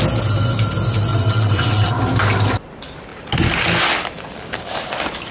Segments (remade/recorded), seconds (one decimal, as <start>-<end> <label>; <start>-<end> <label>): 0.0-1.1 recorded; 1.1-2.0 remade; 2.0-5.3 recorded